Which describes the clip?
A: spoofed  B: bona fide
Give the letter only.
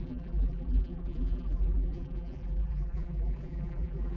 A